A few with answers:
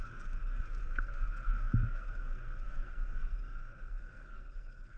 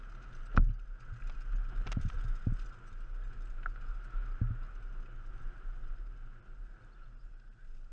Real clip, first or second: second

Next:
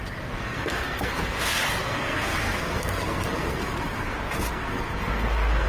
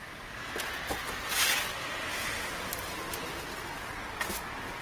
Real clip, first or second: second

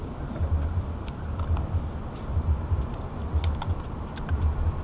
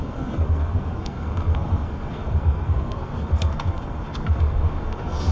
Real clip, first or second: first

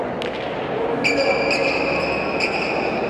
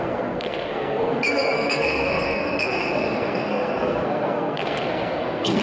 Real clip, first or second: first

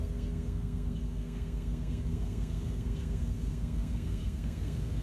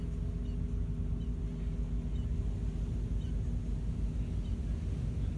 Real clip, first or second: second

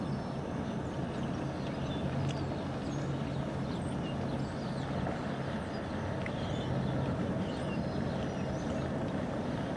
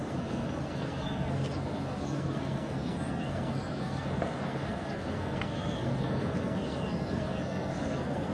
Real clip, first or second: first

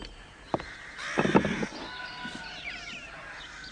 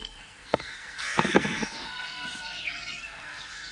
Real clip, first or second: first